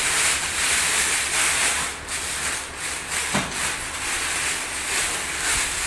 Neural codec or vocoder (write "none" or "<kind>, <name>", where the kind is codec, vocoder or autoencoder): none